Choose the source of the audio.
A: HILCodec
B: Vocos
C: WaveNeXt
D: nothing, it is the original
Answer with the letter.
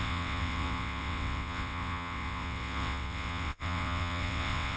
C